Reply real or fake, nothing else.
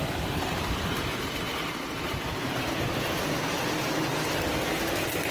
real